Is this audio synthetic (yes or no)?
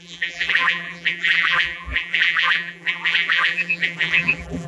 yes